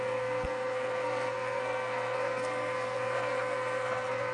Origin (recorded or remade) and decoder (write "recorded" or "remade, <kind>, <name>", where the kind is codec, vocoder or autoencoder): remade, codec, SNAC